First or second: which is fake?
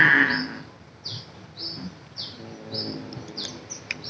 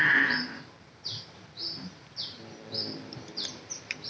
second